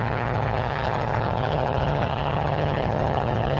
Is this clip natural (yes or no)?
no